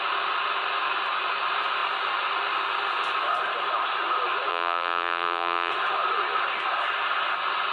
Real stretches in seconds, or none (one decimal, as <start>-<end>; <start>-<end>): 0.0-4.5; 5.7-7.7